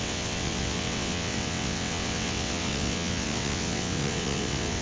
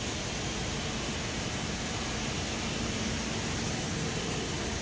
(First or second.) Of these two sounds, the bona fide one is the second